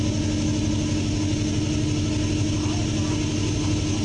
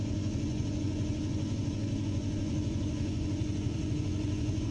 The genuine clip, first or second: first